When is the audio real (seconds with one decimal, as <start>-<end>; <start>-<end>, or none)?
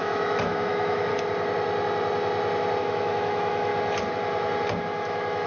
1.1-2.8; 3.7-4.8